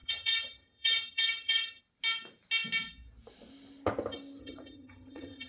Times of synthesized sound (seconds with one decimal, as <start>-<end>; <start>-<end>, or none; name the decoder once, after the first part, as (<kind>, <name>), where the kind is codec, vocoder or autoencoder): 0.0-1.8 (vocoder, HiFi-GAN); 4.4-5.5